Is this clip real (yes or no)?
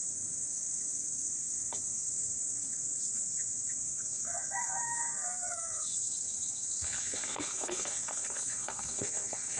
no